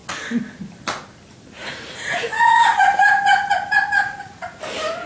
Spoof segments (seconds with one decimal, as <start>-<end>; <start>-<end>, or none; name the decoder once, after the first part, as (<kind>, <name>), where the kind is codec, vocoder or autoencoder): 1.6-4.6 (vocoder, Vocos)